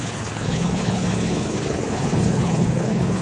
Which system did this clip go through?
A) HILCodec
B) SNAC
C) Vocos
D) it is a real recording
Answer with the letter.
A